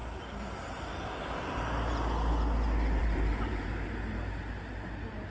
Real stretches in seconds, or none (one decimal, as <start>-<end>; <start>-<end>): 0.0-3.0; 3.7-5.3